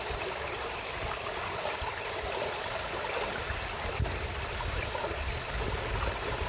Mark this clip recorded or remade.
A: recorded